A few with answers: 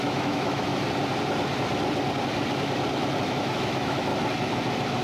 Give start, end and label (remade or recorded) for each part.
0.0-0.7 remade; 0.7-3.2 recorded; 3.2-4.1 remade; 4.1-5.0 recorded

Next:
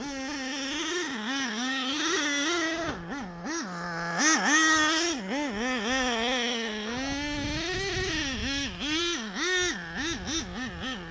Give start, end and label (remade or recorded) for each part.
0.0-8.4 recorded; 8.4-9.0 remade; 9.0-11.1 recorded

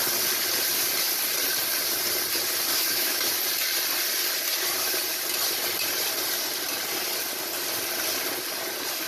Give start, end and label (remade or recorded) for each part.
0.0-2.7 recorded; 2.7-3.2 remade; 3.2-9.1 recorded

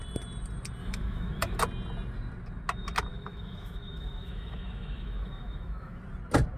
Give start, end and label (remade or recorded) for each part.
0.0-0.8 recorded; 0.8-1.6 remade; 1.6-3.1 recorded; 3.1-6.0 remade; 6.0-6.6 recorded

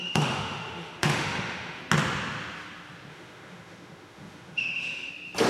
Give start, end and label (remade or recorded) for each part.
0.0-1.8 remade; 1.8-3.1 recorded; 3.1-5.1 remade; 5.1-5.5 recorded